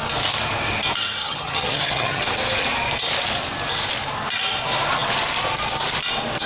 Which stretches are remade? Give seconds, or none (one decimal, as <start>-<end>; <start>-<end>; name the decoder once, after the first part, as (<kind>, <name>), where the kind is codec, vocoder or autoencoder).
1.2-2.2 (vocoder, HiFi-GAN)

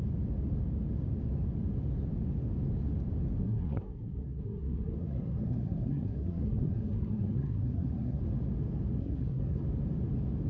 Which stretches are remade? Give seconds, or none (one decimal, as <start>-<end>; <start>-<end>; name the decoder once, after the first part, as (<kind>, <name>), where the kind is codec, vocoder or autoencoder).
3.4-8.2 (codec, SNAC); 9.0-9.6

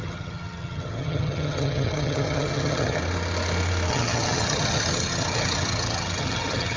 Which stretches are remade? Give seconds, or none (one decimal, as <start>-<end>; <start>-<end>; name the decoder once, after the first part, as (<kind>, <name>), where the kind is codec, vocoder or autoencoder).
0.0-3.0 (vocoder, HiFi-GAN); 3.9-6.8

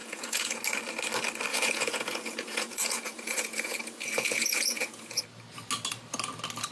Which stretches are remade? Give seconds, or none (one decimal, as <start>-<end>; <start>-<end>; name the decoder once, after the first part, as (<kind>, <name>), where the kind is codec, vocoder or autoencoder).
0.0-0.6 (vocoder, Vocos); 1.5-5.2

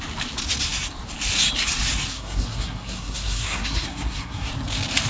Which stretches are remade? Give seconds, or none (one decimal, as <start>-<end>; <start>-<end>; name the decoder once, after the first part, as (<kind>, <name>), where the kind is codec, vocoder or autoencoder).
2.1-4.5 (codec, SNAC)